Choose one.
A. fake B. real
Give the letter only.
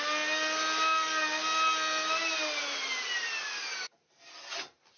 B